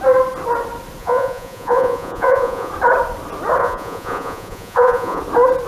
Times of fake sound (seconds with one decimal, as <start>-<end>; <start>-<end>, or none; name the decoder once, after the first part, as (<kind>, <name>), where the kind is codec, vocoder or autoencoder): 1.0-2.7 (vocoder, Vocos); 3.6-5.2